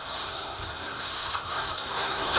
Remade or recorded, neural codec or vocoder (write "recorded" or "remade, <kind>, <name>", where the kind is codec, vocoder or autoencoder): remade, codec, SNAC